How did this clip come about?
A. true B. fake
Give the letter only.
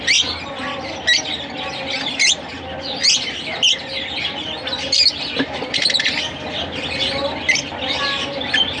A